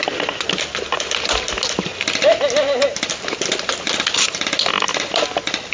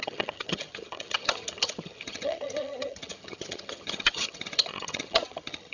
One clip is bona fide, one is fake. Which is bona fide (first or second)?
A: first